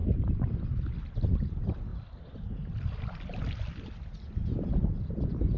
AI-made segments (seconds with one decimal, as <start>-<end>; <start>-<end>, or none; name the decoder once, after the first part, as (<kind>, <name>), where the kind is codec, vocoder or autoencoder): none